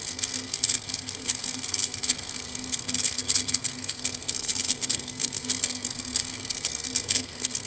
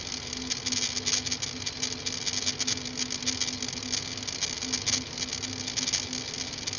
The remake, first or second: first